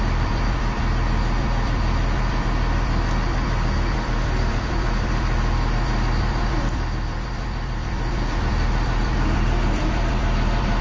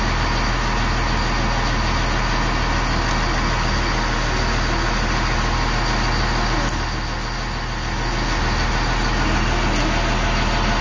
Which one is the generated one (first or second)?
first